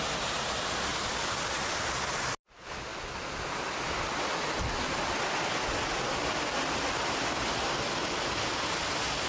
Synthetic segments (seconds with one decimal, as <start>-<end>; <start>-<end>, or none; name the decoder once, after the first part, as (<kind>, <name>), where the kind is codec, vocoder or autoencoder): none